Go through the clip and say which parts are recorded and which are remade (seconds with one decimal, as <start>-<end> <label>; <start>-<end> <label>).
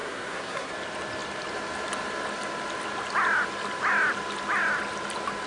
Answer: 0.0-0.7 remade; 0.7-5.5 recorded